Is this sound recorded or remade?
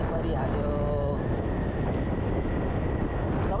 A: recorded